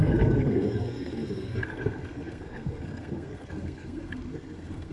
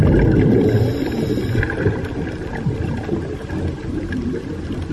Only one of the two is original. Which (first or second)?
second